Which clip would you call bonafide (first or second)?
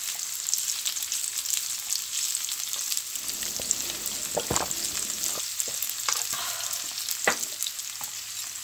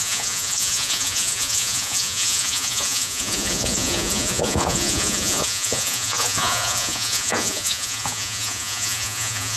first